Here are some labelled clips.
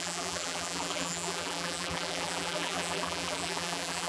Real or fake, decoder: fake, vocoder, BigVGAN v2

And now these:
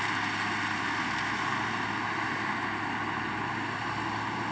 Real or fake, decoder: real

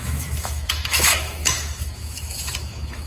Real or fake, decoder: fake, autoencoder, DAC-VAE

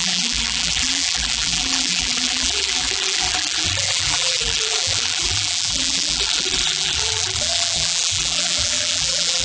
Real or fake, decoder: fake, vocoder, BigVGAN v2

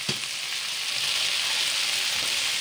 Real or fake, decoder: real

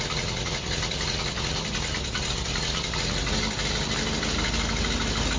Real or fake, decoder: real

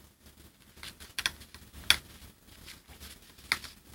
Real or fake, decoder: real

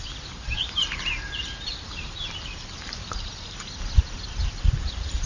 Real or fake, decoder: real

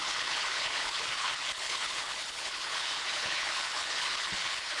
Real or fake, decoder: fake, codec, HILCodec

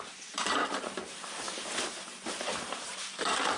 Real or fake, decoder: fake, vocoder, BigVGAN v2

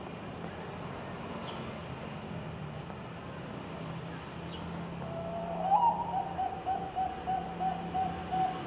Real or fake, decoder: real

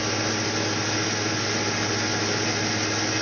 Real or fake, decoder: real